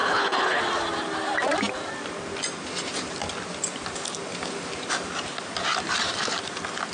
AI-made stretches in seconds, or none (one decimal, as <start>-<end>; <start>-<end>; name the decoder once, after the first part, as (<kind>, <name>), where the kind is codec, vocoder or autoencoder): 0.0-0.6 (codec, HILCodec)